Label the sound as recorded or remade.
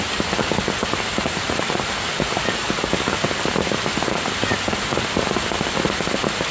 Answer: recorded